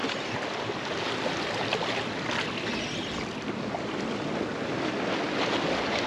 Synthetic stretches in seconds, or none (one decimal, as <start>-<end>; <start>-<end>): none